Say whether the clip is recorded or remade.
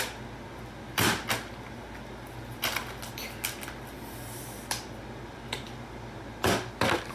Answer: recorded